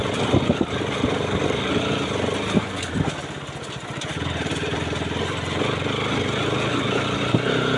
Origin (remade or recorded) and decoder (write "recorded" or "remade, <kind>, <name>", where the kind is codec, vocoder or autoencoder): recorded